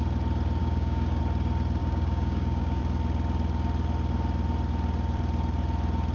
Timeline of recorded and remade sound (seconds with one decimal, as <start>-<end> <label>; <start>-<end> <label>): 0.0-0.6 recorded; 0.6-1.2 remade; 1.2-1.8 recorded; 1.8-2.8 remade; 2.8-6.1 recorded